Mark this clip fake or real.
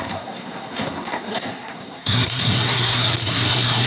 fake